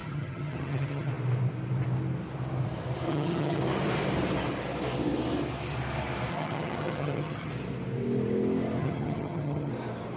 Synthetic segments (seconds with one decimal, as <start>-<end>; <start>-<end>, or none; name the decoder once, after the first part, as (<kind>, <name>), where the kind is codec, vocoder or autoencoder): 0.0-1.1 (vocoder, HiFi-GAN); 3.1-3.6; 6.3-7.5; 8.8-9.7